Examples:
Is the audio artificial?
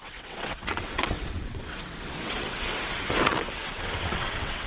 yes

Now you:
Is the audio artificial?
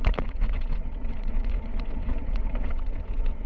yes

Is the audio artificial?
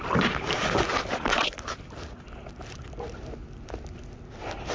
no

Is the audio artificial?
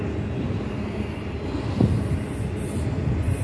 no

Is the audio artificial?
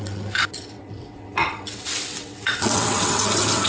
yes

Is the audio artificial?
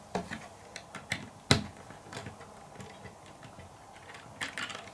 no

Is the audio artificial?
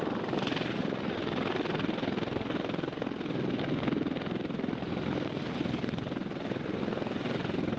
no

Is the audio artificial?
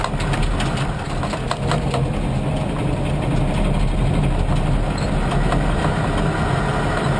no